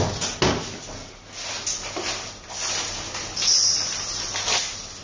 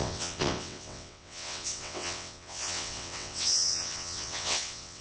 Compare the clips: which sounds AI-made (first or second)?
second